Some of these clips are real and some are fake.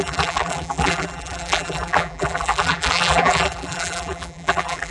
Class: fake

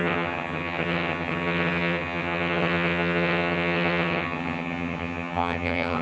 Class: fake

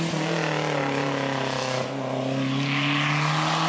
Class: real